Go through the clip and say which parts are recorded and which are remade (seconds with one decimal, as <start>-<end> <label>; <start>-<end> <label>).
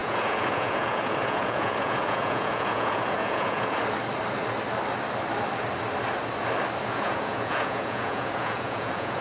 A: 0.0-3.8 remade; 3.8-6.8 recorded; 6.8-9.2 remade